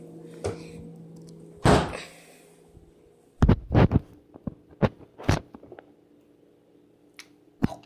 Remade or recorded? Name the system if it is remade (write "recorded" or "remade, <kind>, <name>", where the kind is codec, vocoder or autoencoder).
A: recorded